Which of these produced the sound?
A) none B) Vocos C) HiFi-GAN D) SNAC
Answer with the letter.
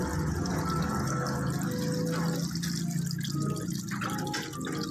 A